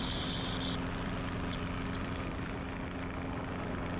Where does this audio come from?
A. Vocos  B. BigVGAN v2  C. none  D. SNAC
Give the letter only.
C